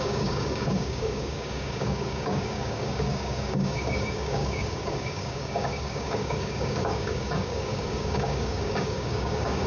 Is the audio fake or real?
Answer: fake